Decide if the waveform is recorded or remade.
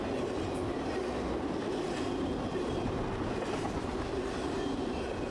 recorded